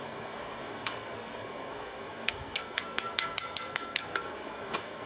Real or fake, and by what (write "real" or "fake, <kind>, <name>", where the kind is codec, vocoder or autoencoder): fake, codec, SNAC